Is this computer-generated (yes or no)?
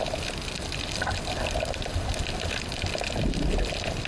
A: no